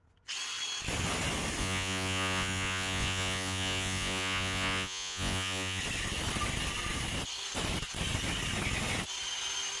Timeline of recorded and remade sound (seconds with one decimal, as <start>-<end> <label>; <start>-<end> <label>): 0.0-1.6 recorded; 1.6-5.8 remade; 5.8-9.8 recorded